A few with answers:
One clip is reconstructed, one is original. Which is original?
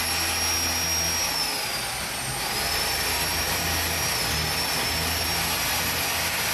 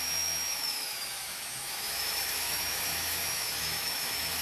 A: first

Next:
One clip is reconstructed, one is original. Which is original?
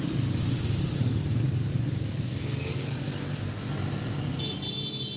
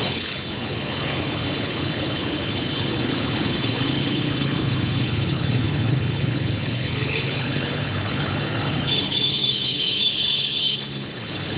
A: first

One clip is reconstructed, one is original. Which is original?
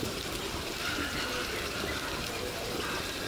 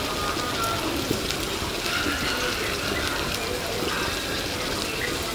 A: second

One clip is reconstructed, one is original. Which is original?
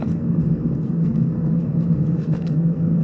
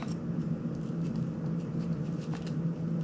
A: second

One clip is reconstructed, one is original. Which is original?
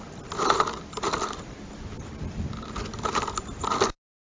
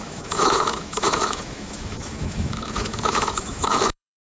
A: first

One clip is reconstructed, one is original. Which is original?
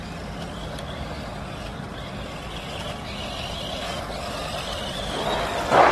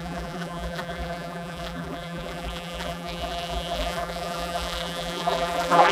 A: first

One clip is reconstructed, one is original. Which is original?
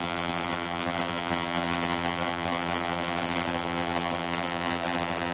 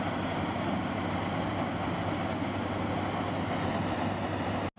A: second